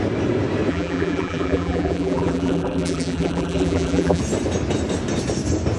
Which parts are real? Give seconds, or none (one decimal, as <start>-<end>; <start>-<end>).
0.0-0.7; 4.2-5.8